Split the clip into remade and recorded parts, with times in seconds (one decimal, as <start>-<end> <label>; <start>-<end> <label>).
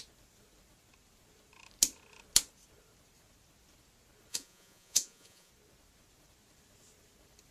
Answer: 0.0-4.3 recorded; 4.3-5.5 remade; 5.5-7.5 recorded